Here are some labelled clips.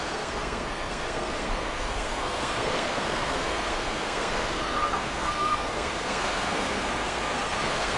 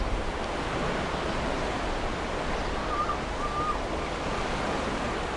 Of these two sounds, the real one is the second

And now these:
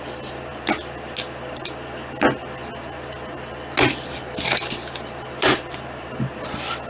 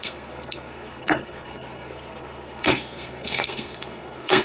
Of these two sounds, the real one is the first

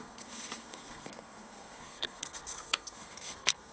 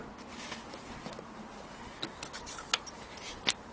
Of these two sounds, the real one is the second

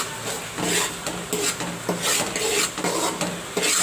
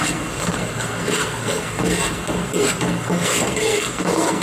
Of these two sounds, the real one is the first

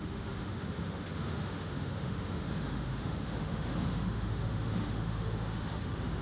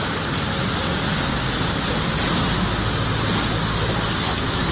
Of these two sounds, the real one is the second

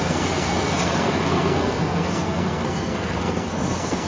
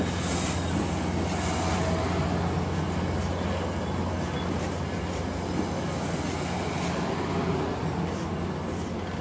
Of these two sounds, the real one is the second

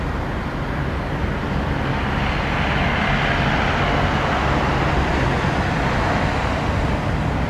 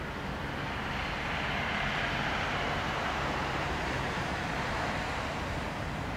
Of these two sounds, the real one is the first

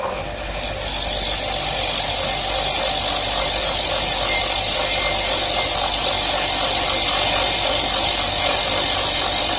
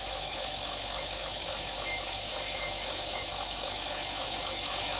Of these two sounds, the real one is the first